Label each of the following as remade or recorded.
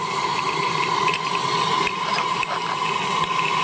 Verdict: recorded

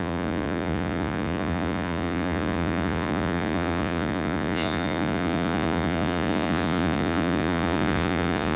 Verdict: remade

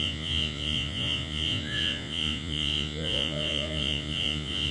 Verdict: remade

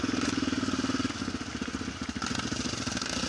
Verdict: recorded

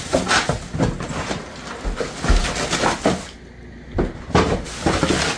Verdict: recorded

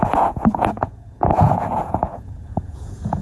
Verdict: remade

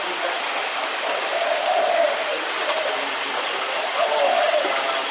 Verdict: recorded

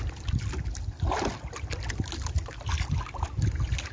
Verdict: recorded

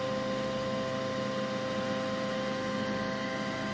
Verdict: recorded